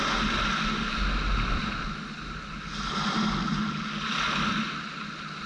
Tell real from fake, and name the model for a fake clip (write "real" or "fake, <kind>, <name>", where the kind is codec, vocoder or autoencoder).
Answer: real